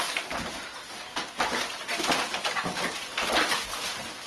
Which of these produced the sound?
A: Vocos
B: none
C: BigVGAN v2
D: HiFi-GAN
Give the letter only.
B